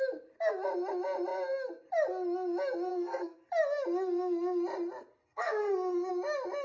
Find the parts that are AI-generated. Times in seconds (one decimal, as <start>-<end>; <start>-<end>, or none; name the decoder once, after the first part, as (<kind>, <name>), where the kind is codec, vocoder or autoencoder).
2.9-3.5 (codec, SNAC); 5.2-6.1